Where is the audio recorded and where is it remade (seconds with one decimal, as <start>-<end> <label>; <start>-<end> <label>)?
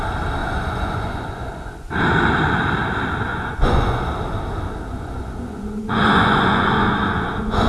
0.0-0.4 recorded; 0.4-2.0 remade; 2.0-3.3 recorded; 3.3-4.1 remade; 4.1-4.9 recorded; 4.9-7.7 remade